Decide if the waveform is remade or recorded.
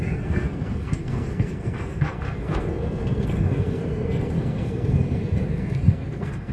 remade